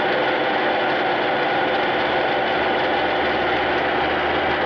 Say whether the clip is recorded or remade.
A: recorded